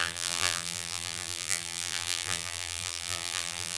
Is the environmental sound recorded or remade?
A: remade